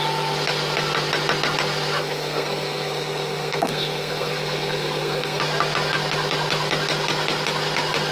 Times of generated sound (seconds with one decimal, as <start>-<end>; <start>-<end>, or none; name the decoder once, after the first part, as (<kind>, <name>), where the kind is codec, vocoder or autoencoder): 2.0-5.4 (codec, SNAC)